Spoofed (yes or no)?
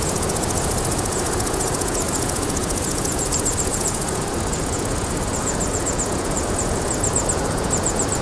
yes